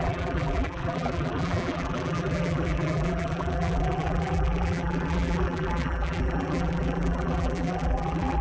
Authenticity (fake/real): fake